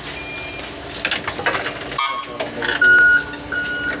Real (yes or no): yes